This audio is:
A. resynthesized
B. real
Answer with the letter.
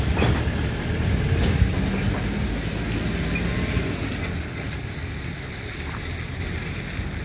B